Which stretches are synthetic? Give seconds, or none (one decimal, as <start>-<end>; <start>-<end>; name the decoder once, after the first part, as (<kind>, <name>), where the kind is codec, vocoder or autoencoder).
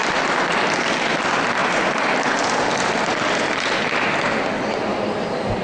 none